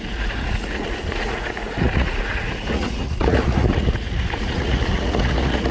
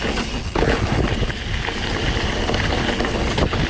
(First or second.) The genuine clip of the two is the second